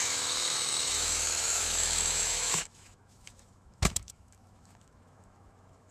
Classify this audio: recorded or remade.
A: remade